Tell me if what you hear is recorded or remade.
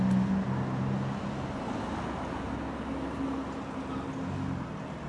recorded